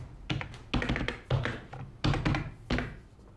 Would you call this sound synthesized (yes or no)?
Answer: no